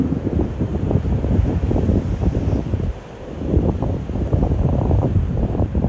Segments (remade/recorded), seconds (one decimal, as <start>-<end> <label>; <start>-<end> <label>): 0.0-0.7 remade; 0.7-2.6 recorded; 2.6-5.9 remade